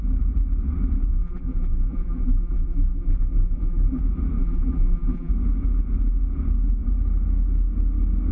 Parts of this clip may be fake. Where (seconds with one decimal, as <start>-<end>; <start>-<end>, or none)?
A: 1.1-4.0; 4.4-5.3

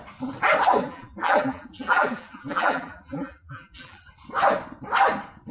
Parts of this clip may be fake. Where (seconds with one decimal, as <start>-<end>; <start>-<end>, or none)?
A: 0.8-4.1

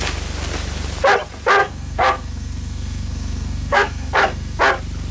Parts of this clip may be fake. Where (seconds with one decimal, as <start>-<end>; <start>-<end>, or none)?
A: 1.6-4.6

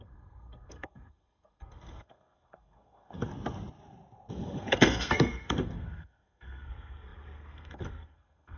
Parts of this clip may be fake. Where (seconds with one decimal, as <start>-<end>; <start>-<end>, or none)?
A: 0.0-3.3; 4.3-8.6

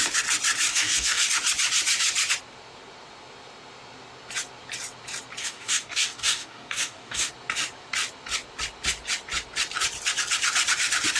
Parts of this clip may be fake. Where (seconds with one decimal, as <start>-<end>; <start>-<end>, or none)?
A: 0.7-1.3; 5.4-7.3